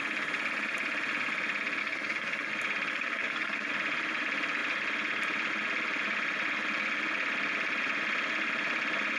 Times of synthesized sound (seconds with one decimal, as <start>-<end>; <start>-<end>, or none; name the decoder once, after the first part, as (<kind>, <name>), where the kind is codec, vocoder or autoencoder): 1.8-2.5 (codec, SNAC); 2.9-3.7